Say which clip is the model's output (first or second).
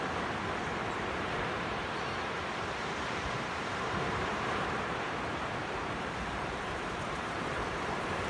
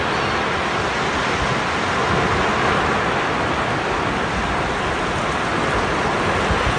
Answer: first